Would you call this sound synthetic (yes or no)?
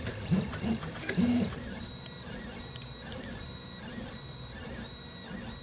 yes